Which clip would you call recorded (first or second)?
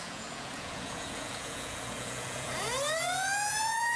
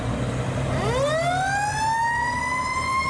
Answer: second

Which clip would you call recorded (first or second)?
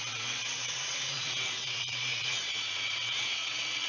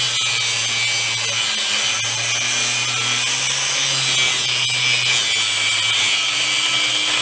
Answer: second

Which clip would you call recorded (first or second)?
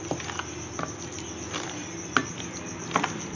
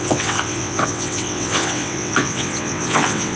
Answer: first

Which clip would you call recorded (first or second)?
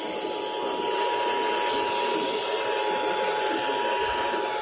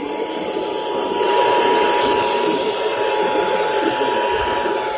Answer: first